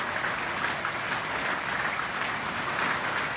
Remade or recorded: recorded